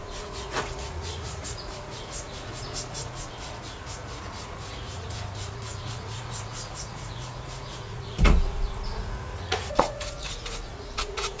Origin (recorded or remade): remade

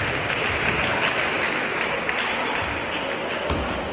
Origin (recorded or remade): recorded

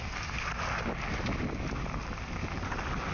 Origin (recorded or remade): recorded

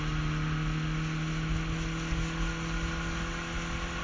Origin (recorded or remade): recorded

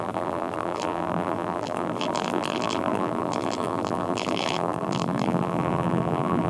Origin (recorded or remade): remade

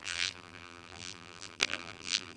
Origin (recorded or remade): remade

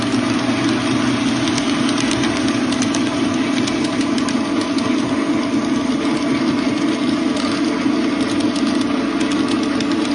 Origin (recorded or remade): recorded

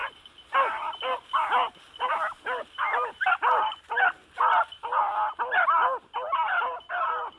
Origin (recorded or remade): recorded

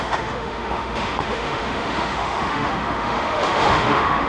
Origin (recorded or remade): remade